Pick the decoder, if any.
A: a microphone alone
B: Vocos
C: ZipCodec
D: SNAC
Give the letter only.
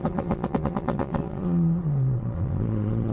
B